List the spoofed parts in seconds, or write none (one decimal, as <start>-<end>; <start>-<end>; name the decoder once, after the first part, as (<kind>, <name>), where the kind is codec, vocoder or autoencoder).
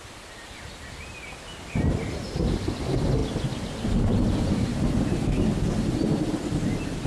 none